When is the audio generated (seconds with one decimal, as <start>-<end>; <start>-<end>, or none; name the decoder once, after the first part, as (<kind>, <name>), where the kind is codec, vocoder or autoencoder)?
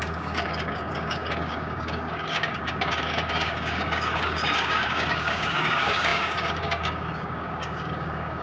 0.0-8.4 (codec, DAC)